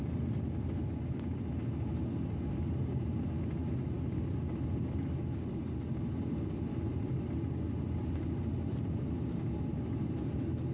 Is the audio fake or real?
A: real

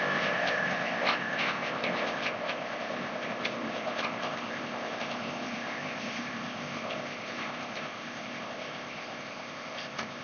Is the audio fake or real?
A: fake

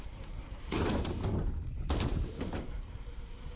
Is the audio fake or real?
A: fake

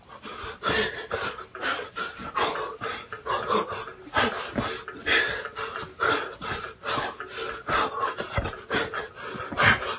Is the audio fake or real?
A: real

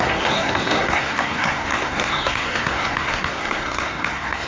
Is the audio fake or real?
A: fake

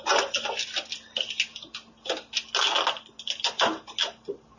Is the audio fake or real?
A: real